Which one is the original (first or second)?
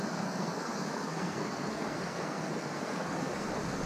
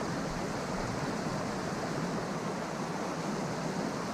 second